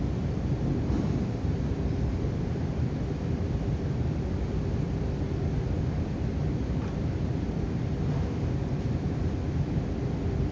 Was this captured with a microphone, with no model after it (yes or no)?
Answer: yes